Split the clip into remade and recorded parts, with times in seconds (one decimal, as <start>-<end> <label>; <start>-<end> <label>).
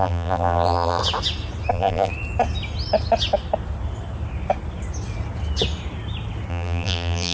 0.0-1.0 remade; 1.0-1.7 recorded; 1.7-2.1 remade; 2.1-6.5 recorded; 6.5-7.3 remade